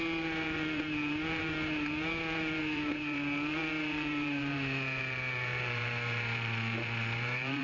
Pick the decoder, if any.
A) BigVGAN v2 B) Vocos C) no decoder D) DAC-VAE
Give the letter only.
A